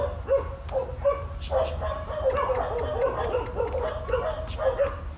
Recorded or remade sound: recorded